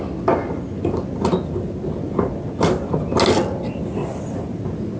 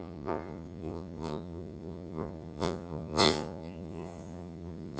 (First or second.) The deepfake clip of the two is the second